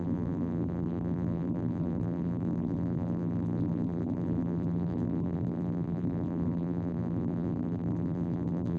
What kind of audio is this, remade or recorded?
remade